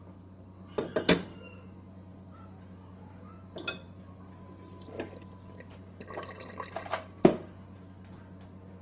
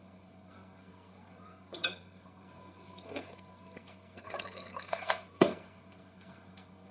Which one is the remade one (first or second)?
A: second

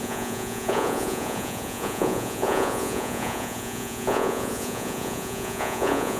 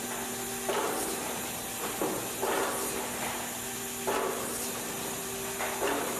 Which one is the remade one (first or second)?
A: first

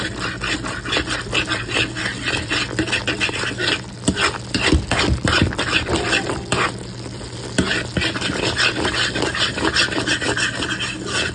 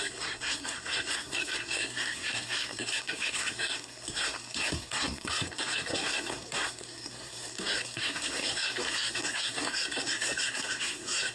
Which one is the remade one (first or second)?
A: second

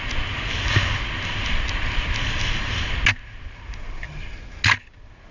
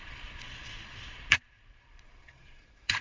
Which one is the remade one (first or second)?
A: second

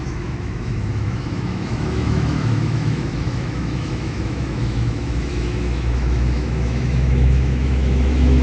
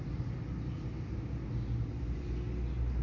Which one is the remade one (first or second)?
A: first